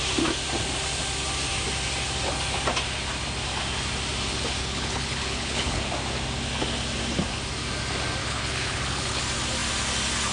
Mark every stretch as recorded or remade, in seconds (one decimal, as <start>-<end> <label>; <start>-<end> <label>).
0.0-4.6 recorded; 4.6-5.8 remade; 5.8-8.2 recorded; 8.2-9.2 remade; 9.2-10.3 recorded